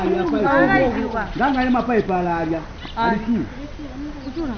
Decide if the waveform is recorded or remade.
recorded